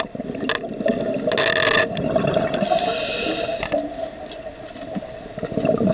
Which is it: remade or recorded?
recorded